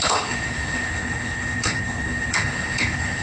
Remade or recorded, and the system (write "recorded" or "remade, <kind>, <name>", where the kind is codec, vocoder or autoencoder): remade, codec, HILCodec